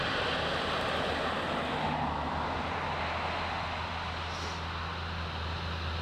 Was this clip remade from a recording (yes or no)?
no